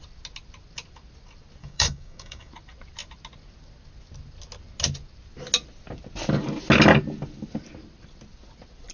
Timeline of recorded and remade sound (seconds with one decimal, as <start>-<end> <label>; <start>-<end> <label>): 0.0-1.6 recorded; 1.6-2.5 remade; 2.5-8.9 recorded